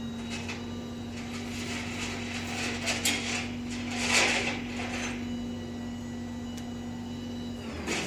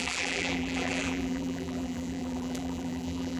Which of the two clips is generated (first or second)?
second